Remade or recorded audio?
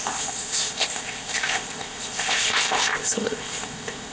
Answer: remade